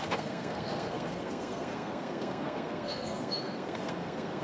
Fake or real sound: fake